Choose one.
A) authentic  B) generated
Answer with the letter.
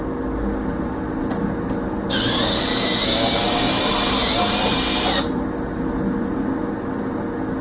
A